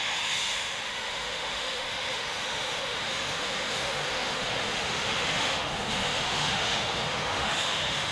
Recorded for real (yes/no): no